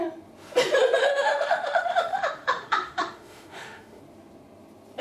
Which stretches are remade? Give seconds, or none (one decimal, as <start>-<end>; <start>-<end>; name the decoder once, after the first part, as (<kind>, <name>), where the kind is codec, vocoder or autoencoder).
1.0-4.0 (autoencoder, DAC-VAE)